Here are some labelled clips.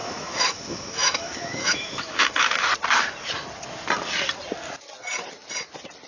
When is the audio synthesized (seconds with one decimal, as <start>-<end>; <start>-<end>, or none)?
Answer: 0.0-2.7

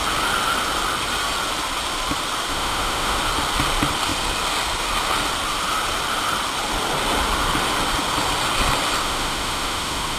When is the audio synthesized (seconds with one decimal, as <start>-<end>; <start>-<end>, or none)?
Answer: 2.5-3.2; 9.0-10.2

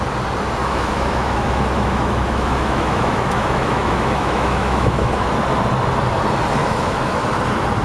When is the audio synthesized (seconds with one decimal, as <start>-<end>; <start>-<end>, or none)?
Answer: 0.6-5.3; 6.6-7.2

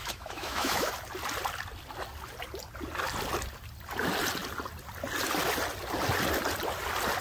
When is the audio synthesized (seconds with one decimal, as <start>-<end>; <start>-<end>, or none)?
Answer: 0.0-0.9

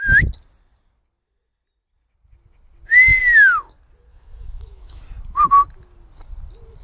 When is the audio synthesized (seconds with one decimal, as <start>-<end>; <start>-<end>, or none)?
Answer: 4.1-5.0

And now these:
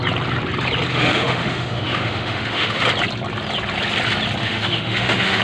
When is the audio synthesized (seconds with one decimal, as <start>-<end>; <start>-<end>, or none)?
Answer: 0.9-2.8; 4.4-5.4

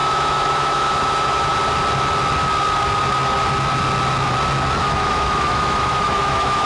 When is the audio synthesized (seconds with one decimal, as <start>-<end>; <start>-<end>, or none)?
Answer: 0.0-1.5; 4.8-6.7